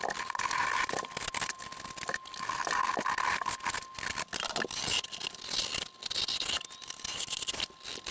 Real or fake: real